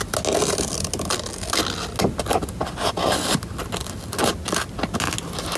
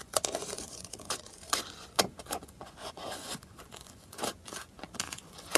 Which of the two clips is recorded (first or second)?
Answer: first